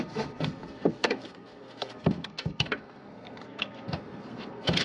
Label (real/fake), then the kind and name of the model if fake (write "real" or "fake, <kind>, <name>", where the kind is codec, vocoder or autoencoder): fake, codec, SNAC